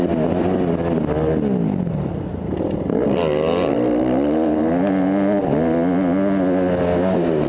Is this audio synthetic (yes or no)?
no